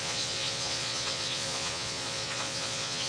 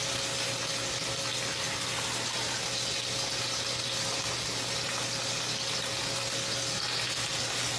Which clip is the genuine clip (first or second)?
second